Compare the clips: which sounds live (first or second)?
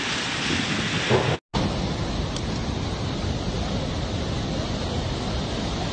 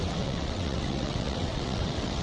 first